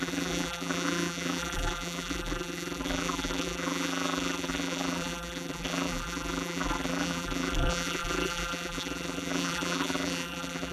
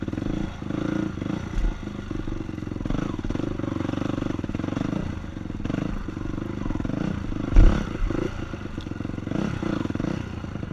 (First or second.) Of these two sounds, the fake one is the first